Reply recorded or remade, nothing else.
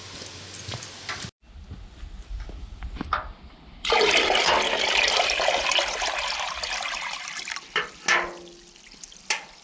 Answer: recorded